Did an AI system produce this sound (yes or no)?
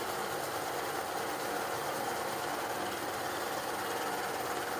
no